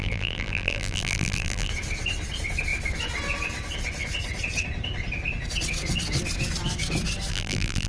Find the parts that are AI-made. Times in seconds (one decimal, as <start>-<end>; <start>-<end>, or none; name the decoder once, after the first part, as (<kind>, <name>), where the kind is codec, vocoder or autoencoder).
0.0-1.7 (vocoder, BigVGAN v2); 7.3-7.9